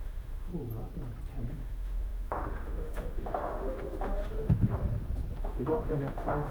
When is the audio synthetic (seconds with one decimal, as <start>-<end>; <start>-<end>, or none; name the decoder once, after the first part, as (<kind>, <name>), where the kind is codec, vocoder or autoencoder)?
0.0-0.5 (autoencoder, DAC-VAE); 1.5-4.8; 5.4-6.5

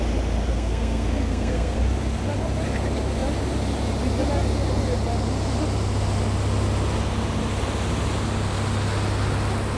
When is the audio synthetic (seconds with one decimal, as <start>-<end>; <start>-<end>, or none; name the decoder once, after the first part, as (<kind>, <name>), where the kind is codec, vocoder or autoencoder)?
0.5-1.8 (codec, SNAC)

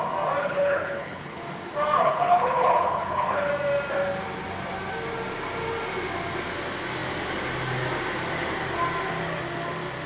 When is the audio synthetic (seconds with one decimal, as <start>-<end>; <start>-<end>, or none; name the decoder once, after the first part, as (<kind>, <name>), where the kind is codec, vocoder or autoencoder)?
0.4-1.4 (codec, HILCodec); 2.0-3.5

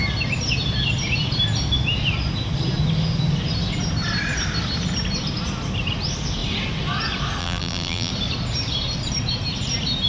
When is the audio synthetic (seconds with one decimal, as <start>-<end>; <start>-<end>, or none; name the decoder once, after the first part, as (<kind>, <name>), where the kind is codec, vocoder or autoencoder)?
7.4-8.1 (vocoder, BigVGAN v2)

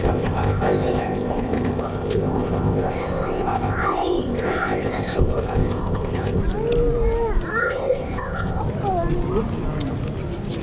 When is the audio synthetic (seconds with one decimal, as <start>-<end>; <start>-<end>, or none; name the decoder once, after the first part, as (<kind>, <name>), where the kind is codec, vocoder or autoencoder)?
0.0-6.4 (codec, ZipCodec); 7.6-8.6